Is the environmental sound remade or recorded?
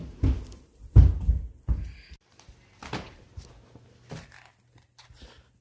recorded